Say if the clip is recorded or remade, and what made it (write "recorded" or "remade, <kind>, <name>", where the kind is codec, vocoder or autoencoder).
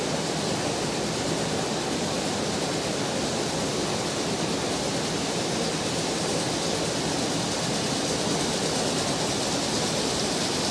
recorded